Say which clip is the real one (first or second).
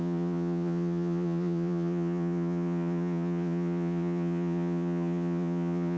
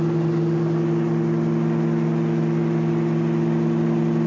second